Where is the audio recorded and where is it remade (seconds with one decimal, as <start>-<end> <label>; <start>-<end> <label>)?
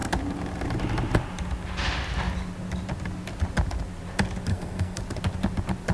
0.0-4.5 recorded; 4.5-5.0 remade; 5.0-5.9 recorded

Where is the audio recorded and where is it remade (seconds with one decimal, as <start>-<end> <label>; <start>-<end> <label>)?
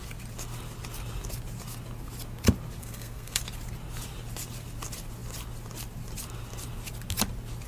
0.0-2.8 recorded; 2.8-3.4 remade; 3.4-7.7 recorded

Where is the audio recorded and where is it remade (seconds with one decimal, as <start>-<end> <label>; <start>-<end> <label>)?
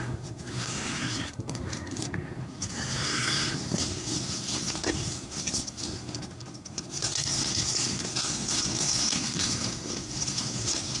0.0-11.0 remade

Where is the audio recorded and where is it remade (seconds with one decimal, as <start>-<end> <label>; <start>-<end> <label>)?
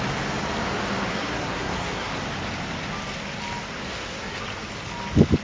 0.0-1.1 recorded; 1.1-2.1 remade; 2.1-3.8 recorded; 3.8-4.4 remade; 4.4-5.4 recorded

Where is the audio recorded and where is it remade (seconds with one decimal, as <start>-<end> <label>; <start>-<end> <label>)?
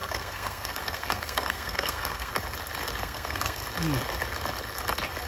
0.0-2.3 remade; 2.3-3.0 recorded; 3.0-3.6 remade; 3.6-5.3 recorded